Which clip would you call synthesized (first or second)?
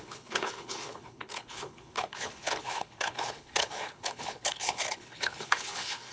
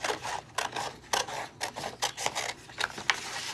first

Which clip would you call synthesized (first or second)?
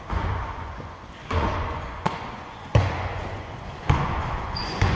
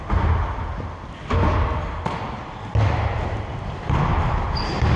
first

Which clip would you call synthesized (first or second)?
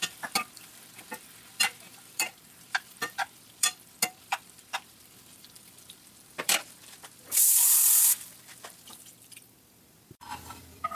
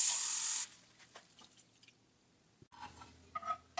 first